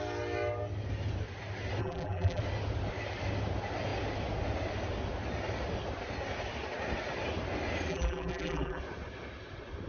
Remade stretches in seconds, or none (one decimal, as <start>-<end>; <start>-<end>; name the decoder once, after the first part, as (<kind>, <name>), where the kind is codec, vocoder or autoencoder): 1.8-2.4 (vocoder, BigVGAN v2); 7.9-8.8